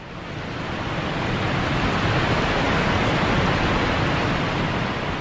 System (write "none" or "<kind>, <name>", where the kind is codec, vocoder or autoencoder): none